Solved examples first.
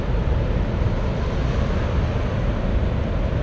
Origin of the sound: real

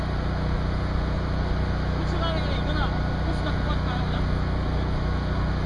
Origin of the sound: real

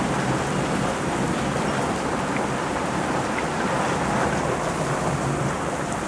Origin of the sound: real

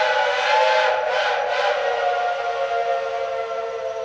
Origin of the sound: real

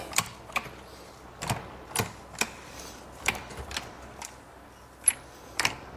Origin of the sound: real